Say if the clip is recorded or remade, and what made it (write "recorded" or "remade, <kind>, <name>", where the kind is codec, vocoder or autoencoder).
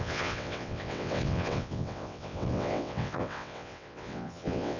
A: remade, vocoder, WaveNeXt